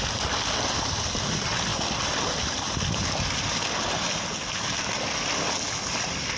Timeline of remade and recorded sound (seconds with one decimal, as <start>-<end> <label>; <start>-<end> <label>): 0.0-6.4 recorded